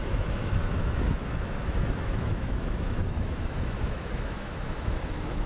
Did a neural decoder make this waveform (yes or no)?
yes